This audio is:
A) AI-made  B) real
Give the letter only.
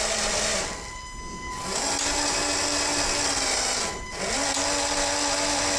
B